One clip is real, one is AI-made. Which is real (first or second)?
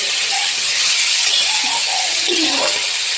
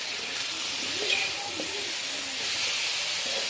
second